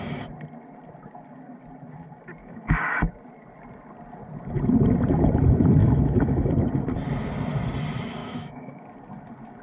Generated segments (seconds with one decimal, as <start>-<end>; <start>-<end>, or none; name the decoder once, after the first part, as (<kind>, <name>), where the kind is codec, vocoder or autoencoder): 2.4-3.0 (autoencoder, DAC-VAE); 5.8-6.5; 8.2-8.8